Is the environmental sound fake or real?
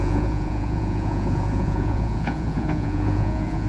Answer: fake